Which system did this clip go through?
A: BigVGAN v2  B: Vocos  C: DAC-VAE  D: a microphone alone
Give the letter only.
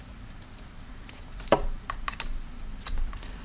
D